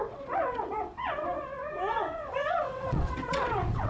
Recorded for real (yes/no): no